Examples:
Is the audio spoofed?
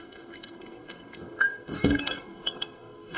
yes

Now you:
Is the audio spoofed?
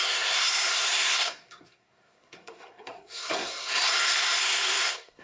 yes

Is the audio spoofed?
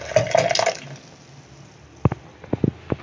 no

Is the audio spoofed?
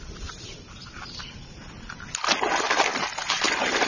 no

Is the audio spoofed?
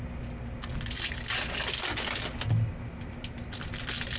no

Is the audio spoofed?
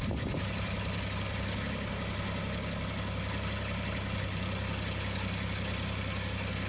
no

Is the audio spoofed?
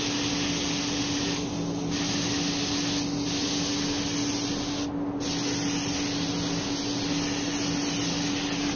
no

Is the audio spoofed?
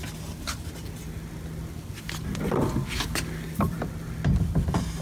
no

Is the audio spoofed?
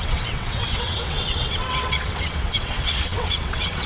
yes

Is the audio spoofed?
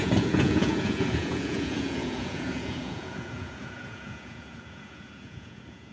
yes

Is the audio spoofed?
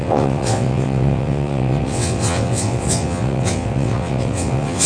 yes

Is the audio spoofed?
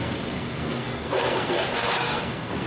yes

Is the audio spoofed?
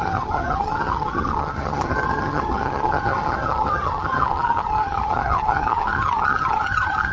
yes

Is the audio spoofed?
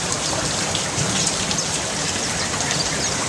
yes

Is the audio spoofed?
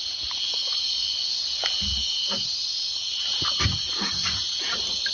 no